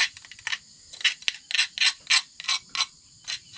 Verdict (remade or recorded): recorded